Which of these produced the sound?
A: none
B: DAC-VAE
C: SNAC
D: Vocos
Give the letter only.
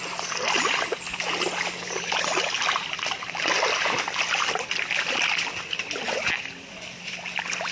A